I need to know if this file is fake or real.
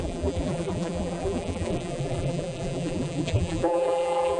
fake